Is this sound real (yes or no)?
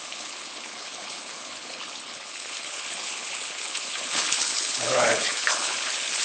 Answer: no